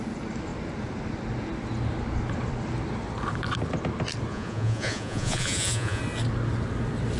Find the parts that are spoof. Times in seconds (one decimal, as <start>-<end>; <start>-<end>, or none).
4.3-6.0